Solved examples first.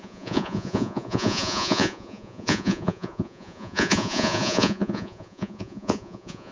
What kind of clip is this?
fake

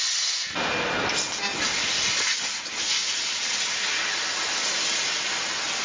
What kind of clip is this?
real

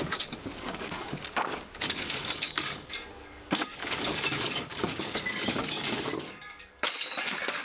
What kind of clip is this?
fake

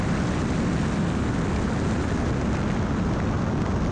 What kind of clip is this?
real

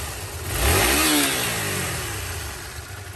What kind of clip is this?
real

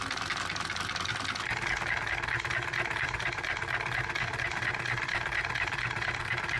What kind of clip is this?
real